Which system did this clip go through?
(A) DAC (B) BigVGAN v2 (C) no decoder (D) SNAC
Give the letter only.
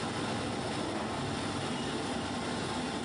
C